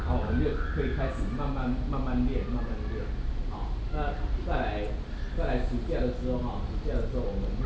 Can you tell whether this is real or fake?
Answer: real